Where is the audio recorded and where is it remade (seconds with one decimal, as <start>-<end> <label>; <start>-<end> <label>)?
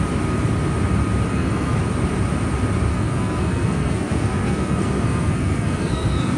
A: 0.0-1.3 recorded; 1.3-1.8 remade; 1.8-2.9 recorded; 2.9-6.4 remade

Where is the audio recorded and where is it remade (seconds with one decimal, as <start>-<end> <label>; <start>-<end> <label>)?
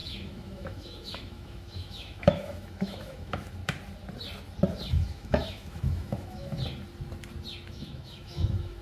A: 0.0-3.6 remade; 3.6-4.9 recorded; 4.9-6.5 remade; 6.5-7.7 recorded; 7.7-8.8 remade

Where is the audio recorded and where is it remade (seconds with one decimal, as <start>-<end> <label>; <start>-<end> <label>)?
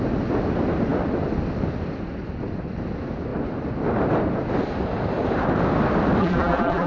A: 0.0-6.2 recorded; 6.2-6.9 remade